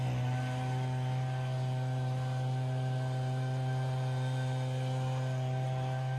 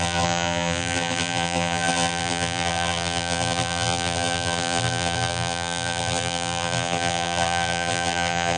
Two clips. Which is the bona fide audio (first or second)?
first